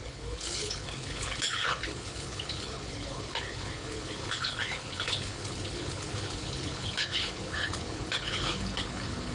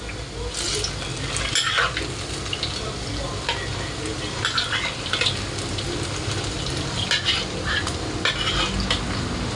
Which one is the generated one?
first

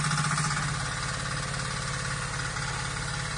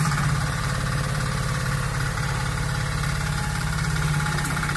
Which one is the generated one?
second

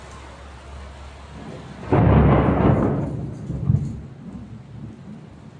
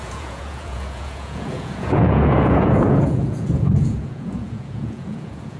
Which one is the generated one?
second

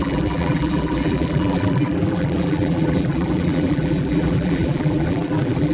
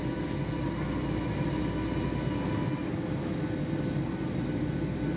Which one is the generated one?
first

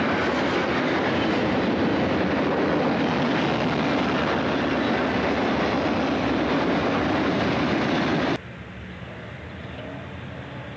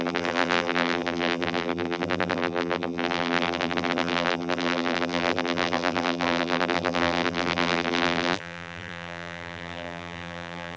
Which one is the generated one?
second